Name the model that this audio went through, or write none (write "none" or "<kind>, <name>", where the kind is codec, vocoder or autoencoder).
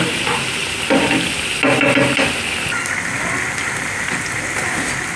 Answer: none